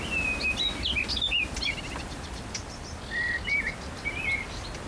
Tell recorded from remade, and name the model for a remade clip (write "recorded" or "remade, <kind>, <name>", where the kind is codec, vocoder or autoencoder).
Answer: recorded